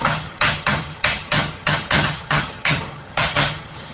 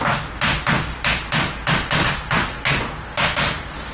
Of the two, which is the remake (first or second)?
first